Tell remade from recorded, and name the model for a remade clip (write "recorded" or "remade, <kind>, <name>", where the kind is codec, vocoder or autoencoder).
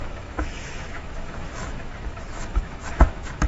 remade, autoencoder, DAC-VAE